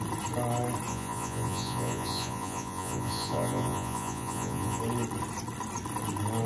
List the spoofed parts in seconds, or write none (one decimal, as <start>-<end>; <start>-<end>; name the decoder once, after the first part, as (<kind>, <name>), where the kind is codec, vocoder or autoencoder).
0.9-4.8 (vocoder, Vocos)